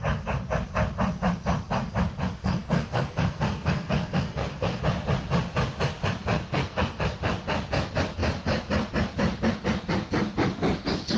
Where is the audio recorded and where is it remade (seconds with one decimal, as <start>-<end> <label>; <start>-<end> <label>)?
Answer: 0.0-2.4 recorded; 2.4-4.8 remade; 4.8-6.3 recorded; 6.3-7.0 remade; 7.0-11.2 recorded